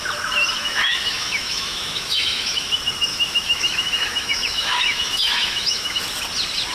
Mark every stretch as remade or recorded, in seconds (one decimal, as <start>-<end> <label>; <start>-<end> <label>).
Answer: 0.0-0.6 recorded; 0.6-2.7 remade; 2.7-3.1 recorded; 3.1-6.0 remade; 6.0-6.7 recorded